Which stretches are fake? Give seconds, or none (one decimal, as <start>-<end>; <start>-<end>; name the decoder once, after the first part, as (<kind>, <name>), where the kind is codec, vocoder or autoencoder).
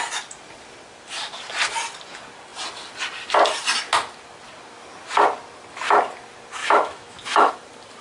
6.6-7.5 (autoencoder, DAC-VAE)